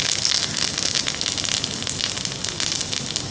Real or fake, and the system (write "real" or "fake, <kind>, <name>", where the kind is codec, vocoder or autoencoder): real